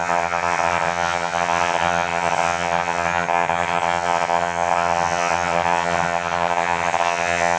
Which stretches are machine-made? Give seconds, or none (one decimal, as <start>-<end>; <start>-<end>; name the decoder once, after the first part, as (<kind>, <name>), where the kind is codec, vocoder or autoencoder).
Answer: 0.0-7.6 (vocoder, HiFi-GAN)